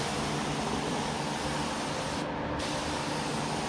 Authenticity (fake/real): real